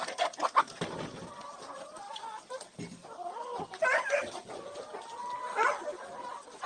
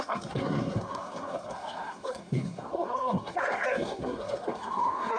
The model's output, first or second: second